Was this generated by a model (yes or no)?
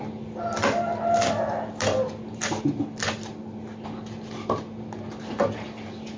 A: no